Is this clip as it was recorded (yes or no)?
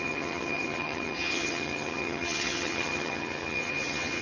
no